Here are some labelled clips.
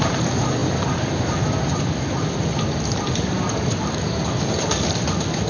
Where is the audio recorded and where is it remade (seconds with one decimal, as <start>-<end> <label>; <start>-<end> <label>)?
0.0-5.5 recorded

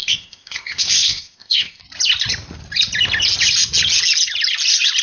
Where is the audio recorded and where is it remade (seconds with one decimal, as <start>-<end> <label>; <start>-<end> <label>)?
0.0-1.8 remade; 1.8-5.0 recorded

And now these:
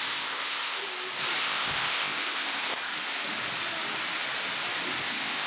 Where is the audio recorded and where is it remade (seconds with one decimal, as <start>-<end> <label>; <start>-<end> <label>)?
0.0-0.8 remade; 0.8-1.4 recorded; 1.4-2.9 remade; 2.9-5.0 recorded; 5.0-5.5 remade